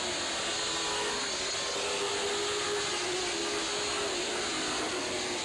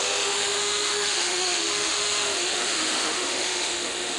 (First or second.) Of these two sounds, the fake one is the second